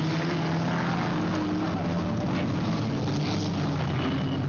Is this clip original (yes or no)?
yes